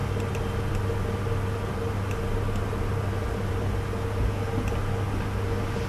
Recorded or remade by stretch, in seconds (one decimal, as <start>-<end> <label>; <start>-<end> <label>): 0.0-5.9 recorded